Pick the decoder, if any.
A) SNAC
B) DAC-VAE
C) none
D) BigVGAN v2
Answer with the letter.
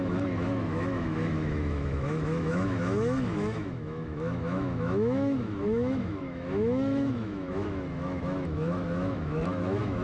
B